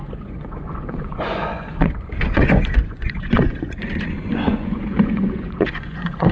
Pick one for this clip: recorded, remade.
remade